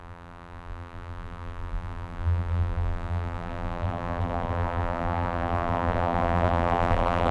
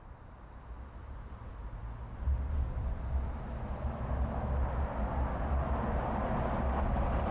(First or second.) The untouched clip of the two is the second